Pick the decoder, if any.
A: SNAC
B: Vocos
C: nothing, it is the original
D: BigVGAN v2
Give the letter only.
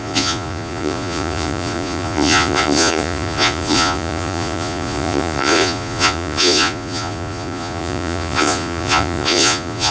B